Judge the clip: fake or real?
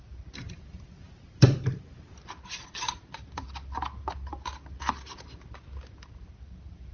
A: real